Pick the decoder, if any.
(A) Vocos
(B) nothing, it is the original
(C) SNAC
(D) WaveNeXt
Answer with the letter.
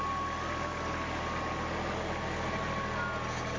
B